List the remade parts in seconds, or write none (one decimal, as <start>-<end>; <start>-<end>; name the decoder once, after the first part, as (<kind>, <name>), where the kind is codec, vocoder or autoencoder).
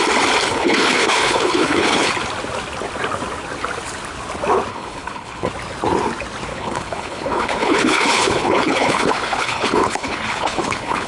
0.5-2.1 (codec, HILCodec); 4.7-5.5; 6.5-11.1